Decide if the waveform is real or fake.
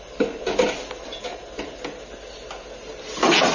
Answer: real